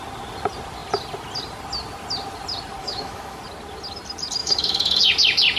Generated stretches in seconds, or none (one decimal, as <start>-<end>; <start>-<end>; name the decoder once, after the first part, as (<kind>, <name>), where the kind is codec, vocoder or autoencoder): 2.8-3.4 (autoencoder, DAC-VAE); 4.4-5.0